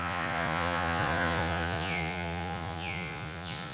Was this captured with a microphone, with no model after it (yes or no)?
no